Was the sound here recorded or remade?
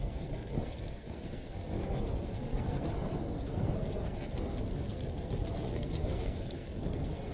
remade